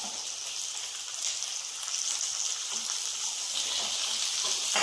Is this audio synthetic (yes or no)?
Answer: no